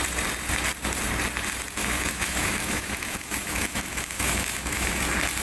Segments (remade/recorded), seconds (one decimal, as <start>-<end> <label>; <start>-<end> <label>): 0.0-1.8 recorded; 1.8-5.0 remade; 5.0-5.4 recorded

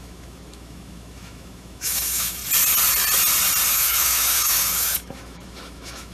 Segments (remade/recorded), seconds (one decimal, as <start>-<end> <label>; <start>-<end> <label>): 0.0-2.4 remade; 2.4-3.7 recorded; 3.7-6.1 remade

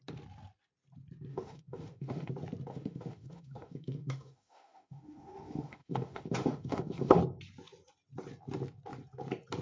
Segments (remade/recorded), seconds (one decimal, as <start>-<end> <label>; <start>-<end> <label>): 0.0-1.3 recorded; 1.3-2.3 remade; 2.3-2.7 recorded; 2.7-7.2 remade; 7.2-9.6 recorded

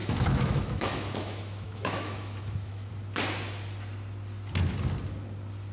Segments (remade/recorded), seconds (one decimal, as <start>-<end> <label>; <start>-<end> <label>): 0.0-2.9 remade; 2.9-5.7 recorded

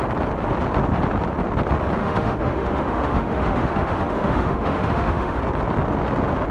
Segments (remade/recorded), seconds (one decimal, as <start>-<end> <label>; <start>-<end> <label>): 0.0-2.0 recorded; 2.0-5.4 remade; 5.4-6.5 recorded

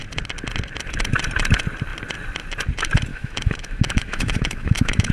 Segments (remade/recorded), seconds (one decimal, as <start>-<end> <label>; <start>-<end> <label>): 0.0-3.1 recorded; 3.1-5.1 remade

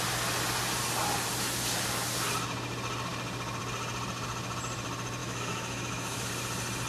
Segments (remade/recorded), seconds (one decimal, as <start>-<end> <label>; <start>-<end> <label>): 0.0-5.2 recorded; 5.2-6.3 remade; 6.3-6.9 recorded